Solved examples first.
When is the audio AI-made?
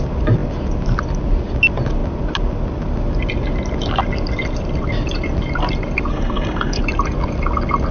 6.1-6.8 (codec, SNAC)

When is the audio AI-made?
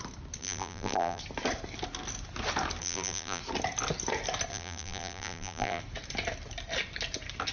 0.4-1.2 (vocoder, BigVGAN v2); 2.8-3.4; 4.5-5.8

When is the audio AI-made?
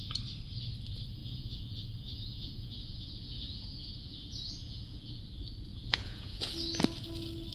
1.2-5.2 (vocoder, Vocos); 5.7-6.5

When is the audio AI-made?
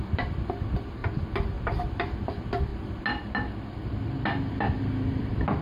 0.0-1.0 (vocoder, BigVGAN v2); 1.6-2.7; 4.8-5.6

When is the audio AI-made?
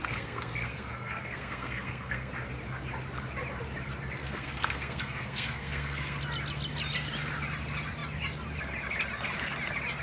0.0-2.3 (codec, SNAC); 4.2-6.2